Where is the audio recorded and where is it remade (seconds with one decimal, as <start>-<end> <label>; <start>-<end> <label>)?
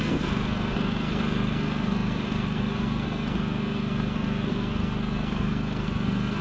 0.0-6.4 remade